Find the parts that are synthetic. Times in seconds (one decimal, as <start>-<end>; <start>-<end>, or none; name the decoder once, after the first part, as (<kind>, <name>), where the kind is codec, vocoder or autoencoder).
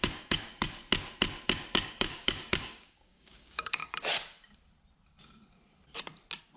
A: 0.0-0.5 (codec, DAC); 1.9-3.8